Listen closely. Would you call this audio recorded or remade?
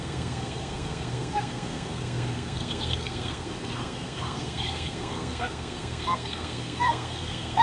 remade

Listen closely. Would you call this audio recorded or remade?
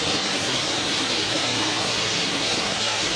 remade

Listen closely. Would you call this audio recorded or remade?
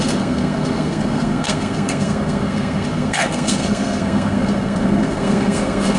remade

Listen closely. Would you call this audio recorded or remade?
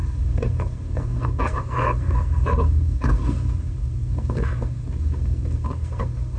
remade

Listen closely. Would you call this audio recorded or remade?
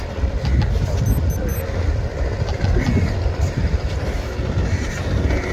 recorded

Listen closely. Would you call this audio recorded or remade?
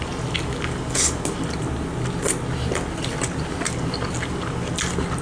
recorded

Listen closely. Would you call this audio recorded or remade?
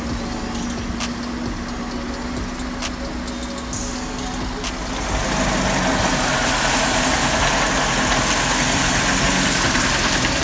recorded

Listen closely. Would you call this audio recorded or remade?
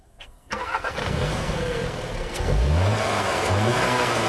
remade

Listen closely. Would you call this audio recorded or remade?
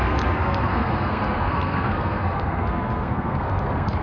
remade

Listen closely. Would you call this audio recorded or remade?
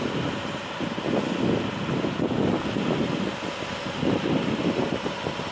recorded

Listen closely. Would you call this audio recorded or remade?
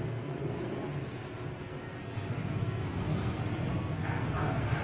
remade